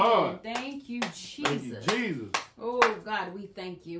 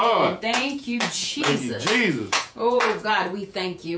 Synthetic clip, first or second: second